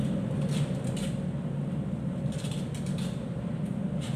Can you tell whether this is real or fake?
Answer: real